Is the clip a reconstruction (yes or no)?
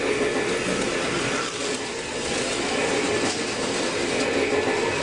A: no